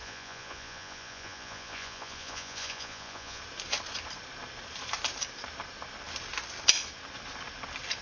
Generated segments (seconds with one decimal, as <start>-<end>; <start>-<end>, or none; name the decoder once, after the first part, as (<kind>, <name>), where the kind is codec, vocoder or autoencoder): 0.0-3.4 (vocoder, Vocos)